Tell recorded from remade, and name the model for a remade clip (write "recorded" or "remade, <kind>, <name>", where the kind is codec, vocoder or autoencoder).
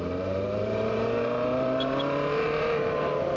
remade, vocoder, BigVGAN v2